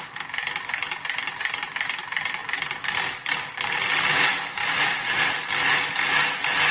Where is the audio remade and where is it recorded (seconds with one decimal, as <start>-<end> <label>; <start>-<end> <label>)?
0.0-4.6 recorded; 4.6-5.1 remade; 5.1-6.7 recorded